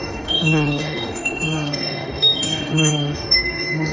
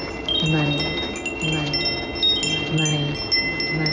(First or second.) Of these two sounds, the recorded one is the second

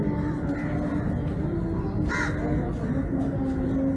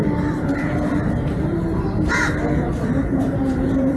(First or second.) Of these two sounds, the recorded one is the first